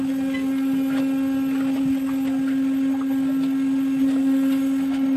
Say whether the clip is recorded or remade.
recorded